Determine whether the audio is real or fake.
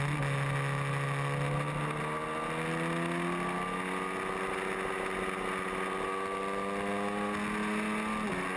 real